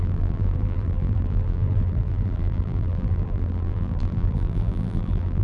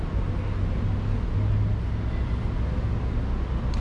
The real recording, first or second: second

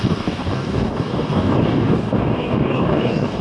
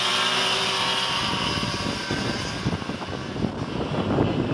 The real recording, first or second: second